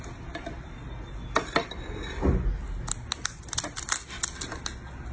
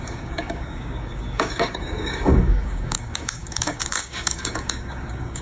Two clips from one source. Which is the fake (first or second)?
second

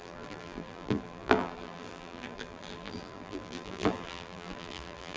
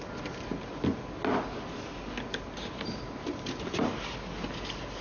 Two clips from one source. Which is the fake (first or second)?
first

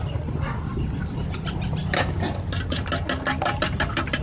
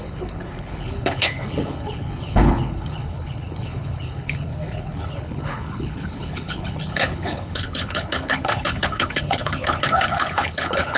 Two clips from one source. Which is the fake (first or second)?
second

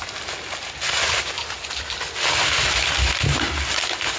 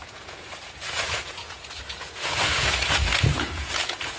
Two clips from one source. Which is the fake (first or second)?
second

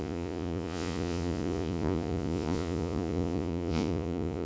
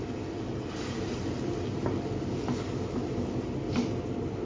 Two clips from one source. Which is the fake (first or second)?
first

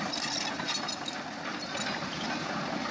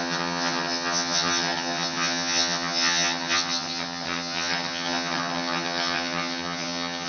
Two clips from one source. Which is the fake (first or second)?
second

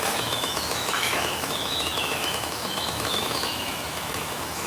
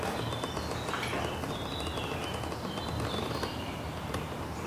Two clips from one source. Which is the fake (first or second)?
first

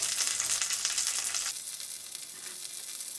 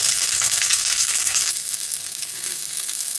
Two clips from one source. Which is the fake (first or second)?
second